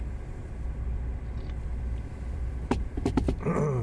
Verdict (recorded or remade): remade